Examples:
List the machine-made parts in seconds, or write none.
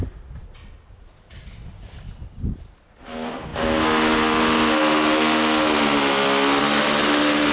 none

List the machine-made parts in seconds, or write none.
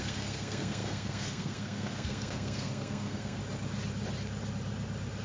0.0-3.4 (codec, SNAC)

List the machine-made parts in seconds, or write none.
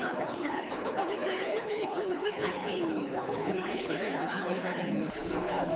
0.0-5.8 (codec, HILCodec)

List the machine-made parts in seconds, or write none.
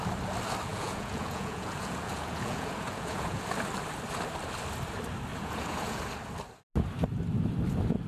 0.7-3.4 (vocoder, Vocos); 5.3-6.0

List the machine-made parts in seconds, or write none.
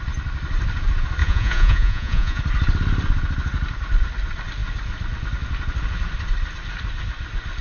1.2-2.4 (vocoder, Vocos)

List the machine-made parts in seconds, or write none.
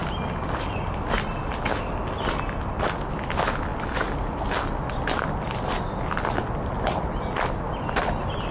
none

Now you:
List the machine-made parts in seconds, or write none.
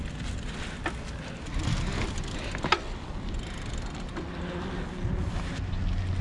none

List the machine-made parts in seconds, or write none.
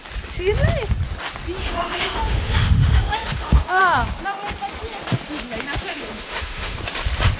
1.6-3.8 (autoencoder, DAC-VAE); 5.9-6.8